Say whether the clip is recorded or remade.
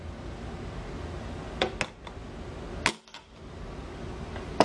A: recorded